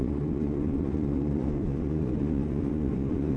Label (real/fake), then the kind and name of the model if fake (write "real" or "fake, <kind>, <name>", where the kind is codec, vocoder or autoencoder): fake, vocoder, Vocos